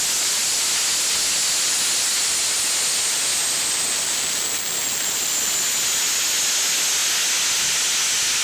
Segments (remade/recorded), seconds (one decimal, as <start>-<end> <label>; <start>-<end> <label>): 0.0-8.4 recorded